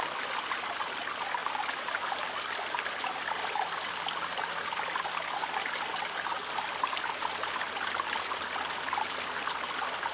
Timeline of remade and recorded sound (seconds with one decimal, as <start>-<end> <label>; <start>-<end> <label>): 0.0-10.1 recorded